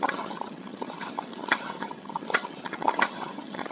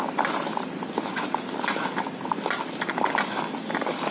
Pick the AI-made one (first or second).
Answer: first